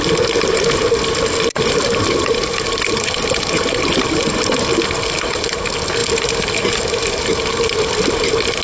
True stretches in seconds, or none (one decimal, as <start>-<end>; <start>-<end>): 0.0-8.6